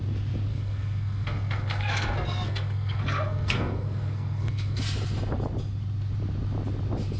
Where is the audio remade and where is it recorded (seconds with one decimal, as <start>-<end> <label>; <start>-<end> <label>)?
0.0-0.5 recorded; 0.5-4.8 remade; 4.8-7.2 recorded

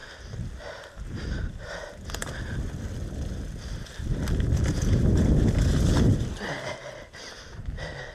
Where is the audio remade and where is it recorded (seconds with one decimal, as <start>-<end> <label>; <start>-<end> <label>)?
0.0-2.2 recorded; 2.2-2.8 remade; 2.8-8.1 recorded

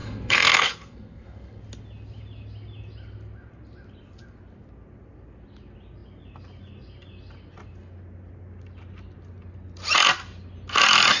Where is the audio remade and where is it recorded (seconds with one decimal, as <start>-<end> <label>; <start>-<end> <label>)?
0.0-1.6 remade; 1.6-11.2 recorded

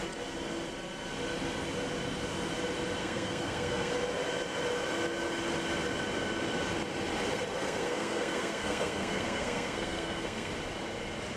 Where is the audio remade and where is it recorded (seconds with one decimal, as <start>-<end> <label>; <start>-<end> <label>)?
0.0-3.0 recorded; 3.0-3.9 remade; 3.9-7.3 recorded; 7.3-10.5 remade; 10.5-11.4 recorded

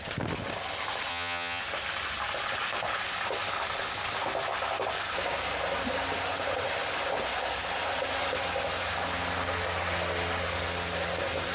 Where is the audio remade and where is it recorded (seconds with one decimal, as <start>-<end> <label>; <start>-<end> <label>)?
0.0-1.1 recorded; 1.1-1.6 remade; 1.6-11.5 recorded